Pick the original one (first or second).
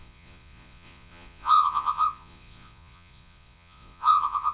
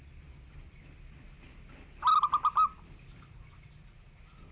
second